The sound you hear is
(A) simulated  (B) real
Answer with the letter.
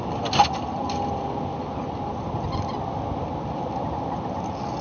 B